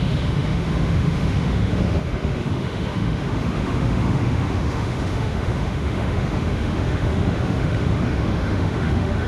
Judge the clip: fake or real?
fake